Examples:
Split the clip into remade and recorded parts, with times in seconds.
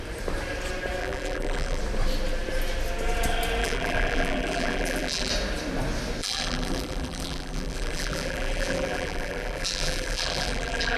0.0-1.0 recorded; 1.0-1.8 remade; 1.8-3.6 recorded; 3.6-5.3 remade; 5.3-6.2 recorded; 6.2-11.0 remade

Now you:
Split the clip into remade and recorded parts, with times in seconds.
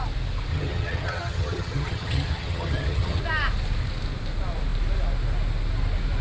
0.0-0.5 recorded; 0.5-3.2 remade; 3.2-6.2 recorded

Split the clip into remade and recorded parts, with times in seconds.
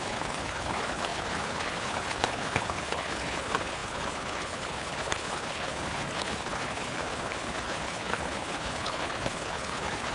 0.0-10.1 remade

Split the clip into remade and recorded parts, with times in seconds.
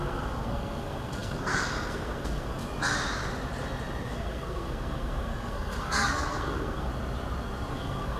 0.0-2.6 remade; 2.6-4.0 recorded; 4.0-6.9 remade; 6.9-7.7 recorded; 7.7-8.2 remade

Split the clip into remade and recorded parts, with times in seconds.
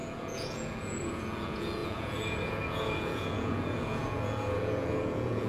0.0-5.5 remade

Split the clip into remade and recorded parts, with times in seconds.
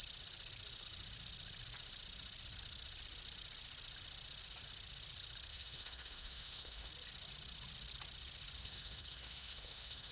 0.0-5.5 recorded; 5.5-6.9 remade; 6.9-8.6 recorded; 8.6-10.1 remade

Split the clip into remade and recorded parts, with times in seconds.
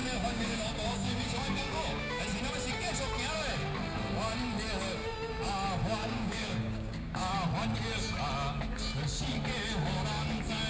0.0-2.2 remade; 2.2-6.0 recorded; 6.0-7.3 remade; 7.3-10.7 recorded